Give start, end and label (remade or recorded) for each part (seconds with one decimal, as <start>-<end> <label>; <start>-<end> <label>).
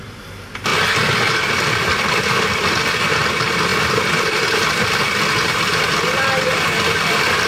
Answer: 0.0-0.7 remade; 0.7-1.5 recorded; 1.5-5.0 remade; 5.0-5.9 recorded; 5.9-7.5 remade